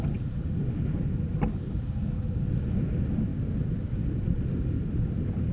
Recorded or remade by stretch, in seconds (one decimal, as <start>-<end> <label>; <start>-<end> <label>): 0.0-5.5 recorded